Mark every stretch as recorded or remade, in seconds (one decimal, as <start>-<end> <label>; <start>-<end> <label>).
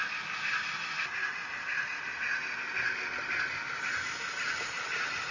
0.0-5.3 recorded